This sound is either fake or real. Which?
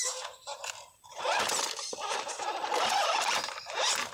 fake